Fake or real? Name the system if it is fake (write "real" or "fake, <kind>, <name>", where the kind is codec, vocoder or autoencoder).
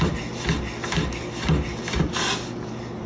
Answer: real